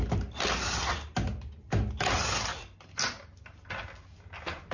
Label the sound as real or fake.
real